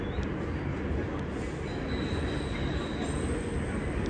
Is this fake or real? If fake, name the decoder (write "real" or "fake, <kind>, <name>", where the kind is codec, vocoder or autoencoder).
real